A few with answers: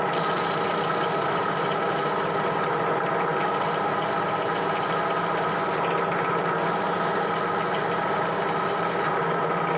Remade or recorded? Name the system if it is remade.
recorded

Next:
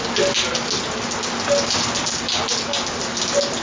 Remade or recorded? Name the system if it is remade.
recorded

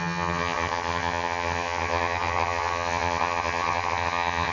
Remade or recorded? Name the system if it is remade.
remade, vocoder, HiFi-GAN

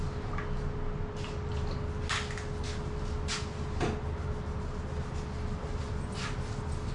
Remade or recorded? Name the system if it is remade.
recorded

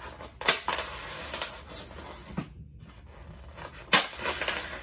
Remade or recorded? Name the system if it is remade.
recorded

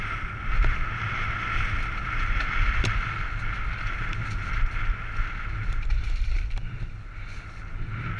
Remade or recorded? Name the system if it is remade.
recorded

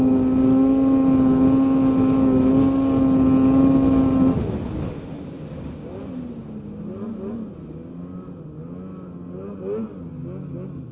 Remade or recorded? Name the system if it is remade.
recorded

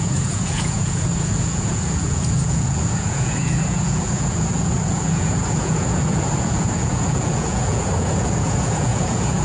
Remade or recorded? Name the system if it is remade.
remade, vocoder, Vocos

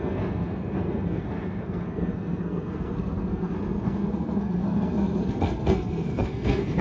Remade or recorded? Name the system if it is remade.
remade, codec, SNAC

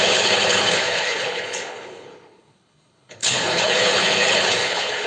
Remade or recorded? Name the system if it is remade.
remade, codec, HILCodec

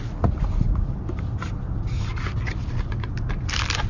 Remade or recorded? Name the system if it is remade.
recorded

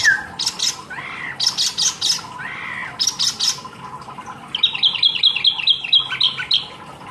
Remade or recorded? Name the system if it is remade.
recorded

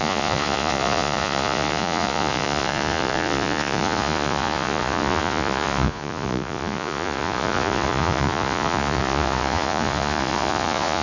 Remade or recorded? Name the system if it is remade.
remade, vocoder, Vocos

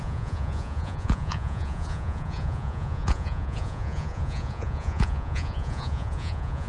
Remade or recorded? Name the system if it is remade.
remade, vocoder, Vocos